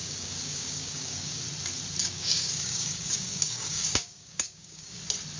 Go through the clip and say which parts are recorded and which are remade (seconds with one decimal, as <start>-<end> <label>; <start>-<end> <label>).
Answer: 0.0-1.4 remade; 1.4-2.0 recorded; 2.0-5.0 remade; 5.0-5.4 recorded